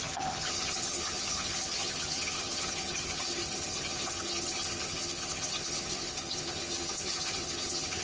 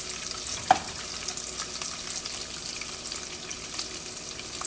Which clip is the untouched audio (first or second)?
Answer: second